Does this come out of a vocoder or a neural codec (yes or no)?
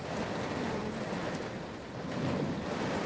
yes